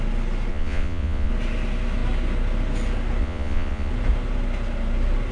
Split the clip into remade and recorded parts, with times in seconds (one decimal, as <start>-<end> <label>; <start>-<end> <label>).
0.0-0.5 recorded; 0.5-1.3 remade; 1.3-3.2 recorded; 3.2-3.9 remade; 3.9-5.3 recorded